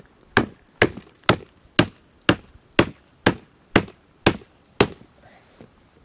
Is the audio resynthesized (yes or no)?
no